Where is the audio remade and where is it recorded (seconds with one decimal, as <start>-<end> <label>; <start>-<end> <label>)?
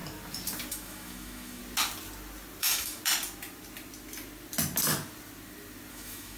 0.0-0.7 recorded; 0.7-1.6 remade; 1.6-2.6 recorded; 2.6-3.0 remade; 3.0-5.9 recorded; 5.9-6.4 remade